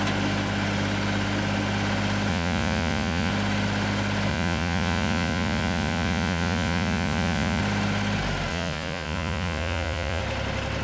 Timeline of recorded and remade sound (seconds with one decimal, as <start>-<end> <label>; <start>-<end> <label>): 0.0-2.3 recorded; 2.3-3.3 remade; 3.3-4.3 recorded; 4.3-7.6 remade; 7.6-8.5 recorded; 8.5-10.2 remade; 10.2-10.8 recorded